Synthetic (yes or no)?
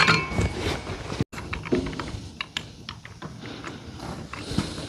no